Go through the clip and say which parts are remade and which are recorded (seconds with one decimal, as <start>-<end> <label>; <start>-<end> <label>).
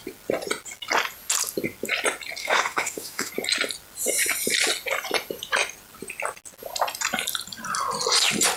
0.0-2.4 recorded; 2.4-3.3 remade; 3.3-8.6 recorded